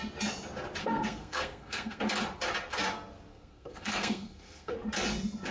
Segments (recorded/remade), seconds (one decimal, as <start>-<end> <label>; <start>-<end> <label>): 0.0-0.8 recorded; 0.8-2.0 remade; 2.0-3.3 recorded; 3.3-4.7 remade; 4.7-5.5 recorded